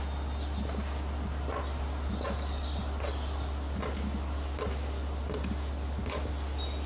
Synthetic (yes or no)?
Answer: no